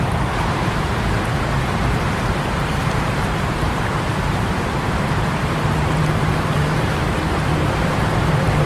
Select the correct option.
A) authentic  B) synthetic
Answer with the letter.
B